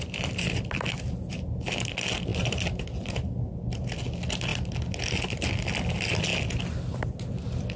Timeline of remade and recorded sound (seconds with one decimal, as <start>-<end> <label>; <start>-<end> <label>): 0.0-7.8 recorded